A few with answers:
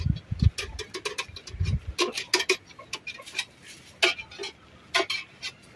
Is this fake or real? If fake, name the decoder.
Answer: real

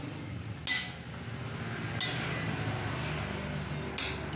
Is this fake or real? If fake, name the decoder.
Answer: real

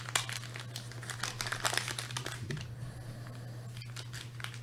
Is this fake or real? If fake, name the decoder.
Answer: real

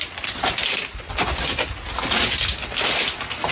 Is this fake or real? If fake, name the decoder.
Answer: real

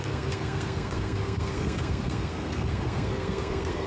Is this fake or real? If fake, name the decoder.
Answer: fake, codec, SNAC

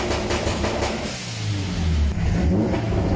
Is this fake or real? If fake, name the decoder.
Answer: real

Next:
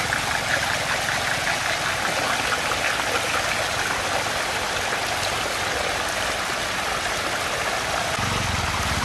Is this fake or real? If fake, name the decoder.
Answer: real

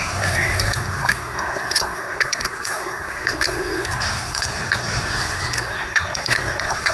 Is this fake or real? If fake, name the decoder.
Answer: fake, codec, SNAC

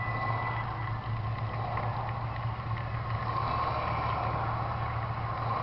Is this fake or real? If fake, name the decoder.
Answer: real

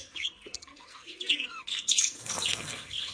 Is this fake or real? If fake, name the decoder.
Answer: fake, codec, SNAC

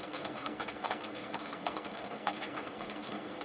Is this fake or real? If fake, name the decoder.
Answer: fake, codec, SNAC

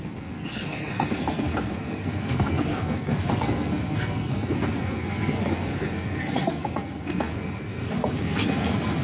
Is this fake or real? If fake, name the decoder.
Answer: fake, codec, SNAC